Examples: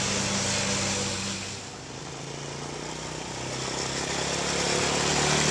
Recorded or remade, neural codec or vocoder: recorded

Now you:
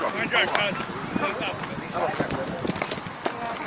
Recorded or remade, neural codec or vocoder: recorded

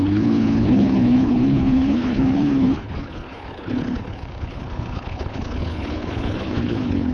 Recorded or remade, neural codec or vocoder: remade, codec, HILCodec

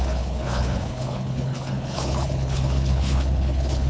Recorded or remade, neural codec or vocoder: remade, codec, HILCodec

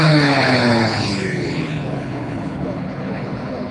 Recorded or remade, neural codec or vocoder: remade, codec, HILCodec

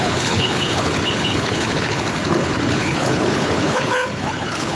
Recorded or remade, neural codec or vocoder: remade, codec, HILCodec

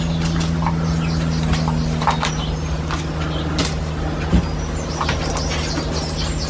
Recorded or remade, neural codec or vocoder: recorded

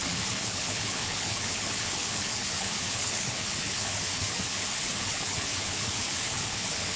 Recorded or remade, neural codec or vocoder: remade, codec, HILCodec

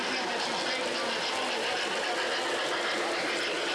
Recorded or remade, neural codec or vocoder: recorded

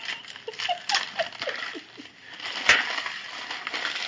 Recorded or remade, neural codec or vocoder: recorded